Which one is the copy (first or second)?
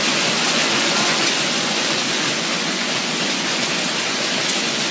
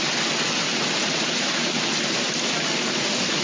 first